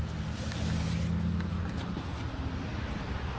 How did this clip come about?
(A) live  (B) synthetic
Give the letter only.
A